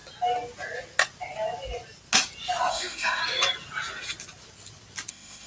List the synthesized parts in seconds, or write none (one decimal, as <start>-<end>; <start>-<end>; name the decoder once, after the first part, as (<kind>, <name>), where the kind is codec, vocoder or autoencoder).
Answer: 2.7-3.2 (autoencoder, DAC-VAE); 5.1-5.5